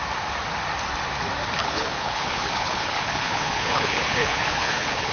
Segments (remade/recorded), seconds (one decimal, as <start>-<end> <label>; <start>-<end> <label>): 0.0-1.6 recorded; 1.6-5.1 remade